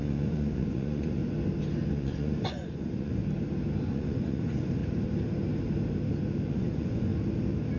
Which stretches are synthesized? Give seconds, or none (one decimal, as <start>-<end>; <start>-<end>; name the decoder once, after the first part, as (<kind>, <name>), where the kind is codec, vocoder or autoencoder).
0.0-1.2 (vocoder, Vocos); 1.9-3.2; 3.9-4.8; 6.5-7.1